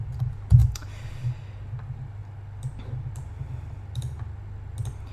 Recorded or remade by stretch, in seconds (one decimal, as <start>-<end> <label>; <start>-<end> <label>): 0.0-5.1 recorded